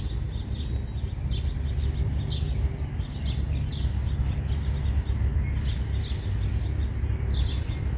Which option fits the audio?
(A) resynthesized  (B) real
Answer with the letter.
B